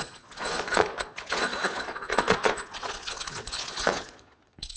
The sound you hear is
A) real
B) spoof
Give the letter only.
B